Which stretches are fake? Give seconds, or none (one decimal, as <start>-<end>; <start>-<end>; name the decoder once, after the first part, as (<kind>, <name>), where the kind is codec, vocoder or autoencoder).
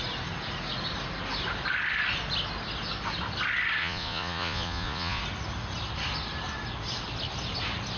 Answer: 3.8-5.2 (vocoder, Vocos)